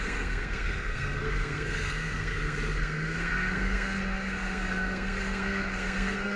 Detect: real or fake fake